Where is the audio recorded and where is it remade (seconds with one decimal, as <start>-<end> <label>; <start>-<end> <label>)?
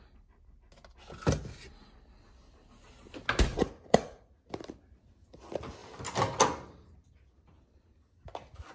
0.0-3.5 recorded; 3.5-4.5 remade; 4.5-8.7 recorded